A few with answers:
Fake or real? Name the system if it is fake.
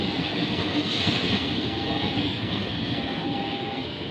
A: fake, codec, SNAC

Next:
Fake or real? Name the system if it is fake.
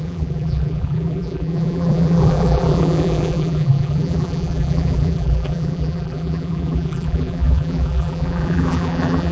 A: fake, vocoder, BigVGAN v2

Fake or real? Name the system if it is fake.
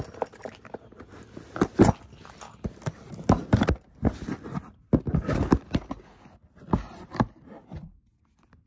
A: real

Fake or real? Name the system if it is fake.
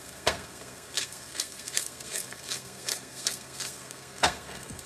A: fake, codec, SNAC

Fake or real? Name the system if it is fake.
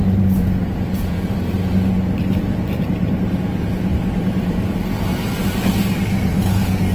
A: fake, vocoder, BigVGAN v2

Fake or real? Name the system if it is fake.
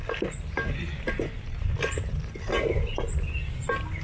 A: real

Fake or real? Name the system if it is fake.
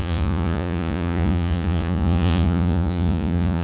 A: fake, vocoder, Vocos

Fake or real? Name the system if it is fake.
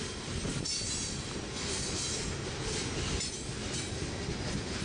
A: real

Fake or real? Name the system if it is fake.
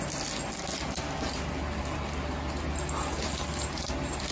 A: real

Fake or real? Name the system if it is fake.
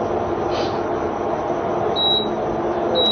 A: real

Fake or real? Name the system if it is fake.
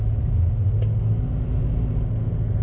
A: real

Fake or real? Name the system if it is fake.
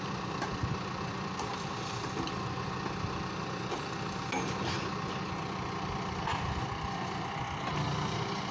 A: real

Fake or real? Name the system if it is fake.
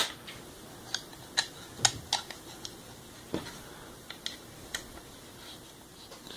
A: real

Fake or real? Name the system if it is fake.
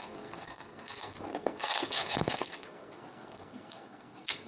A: fake, codec, SNAC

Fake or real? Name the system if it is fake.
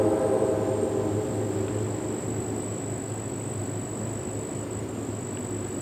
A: real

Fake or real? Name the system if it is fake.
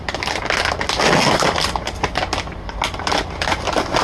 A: real